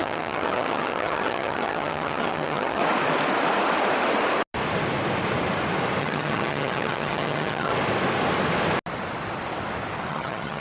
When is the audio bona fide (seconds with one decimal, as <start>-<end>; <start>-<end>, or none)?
2.8-6.0; 7.7-10.1